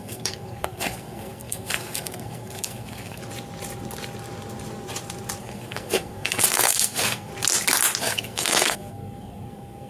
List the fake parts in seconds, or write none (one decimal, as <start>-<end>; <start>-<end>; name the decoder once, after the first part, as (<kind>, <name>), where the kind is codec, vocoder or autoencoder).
0.0-3.2 (codec, SNAC); 5.4-7.3; 8.0-9.9